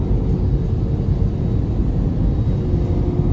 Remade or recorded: recorded